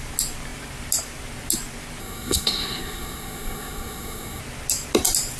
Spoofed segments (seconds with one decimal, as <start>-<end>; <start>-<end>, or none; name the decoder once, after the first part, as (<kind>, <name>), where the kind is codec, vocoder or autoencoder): 2.0-4.4 (codec, SNAC)